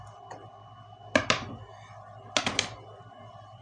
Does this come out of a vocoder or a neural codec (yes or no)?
no